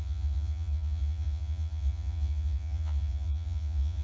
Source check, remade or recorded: remade